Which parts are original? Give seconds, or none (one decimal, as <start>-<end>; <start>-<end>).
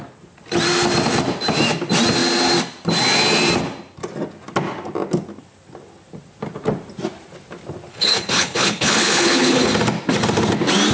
0.0-7.9; 9.7-10.9